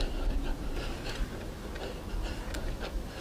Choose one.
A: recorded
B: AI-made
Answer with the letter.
A